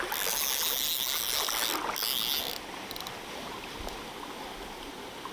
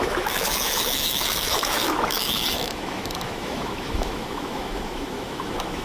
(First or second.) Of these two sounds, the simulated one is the second